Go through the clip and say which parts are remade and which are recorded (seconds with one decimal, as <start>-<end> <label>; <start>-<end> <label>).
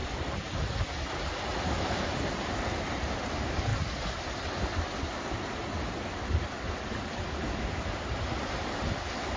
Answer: 0.0-9.4 recorded